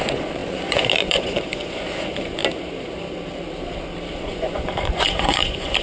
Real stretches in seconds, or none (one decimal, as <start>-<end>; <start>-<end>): 2.4-4.2